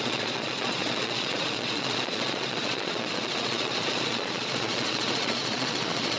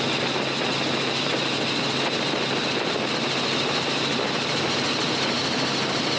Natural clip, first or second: second